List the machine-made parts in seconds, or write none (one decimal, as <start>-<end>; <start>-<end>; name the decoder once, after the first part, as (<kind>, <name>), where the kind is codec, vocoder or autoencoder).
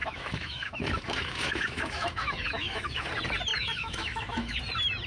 0.0-3.1 (autoencoder, DAC-VAE); 3.5-4.6